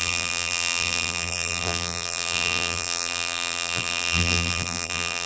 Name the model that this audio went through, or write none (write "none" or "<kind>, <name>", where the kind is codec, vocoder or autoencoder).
vocoder, BigVGAN v2